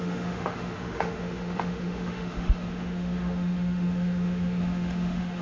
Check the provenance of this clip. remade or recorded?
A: remade